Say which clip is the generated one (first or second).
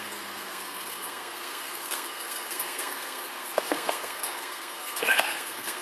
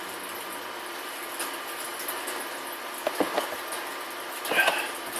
first